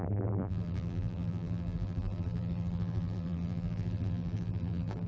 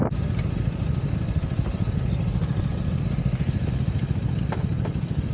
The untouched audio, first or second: second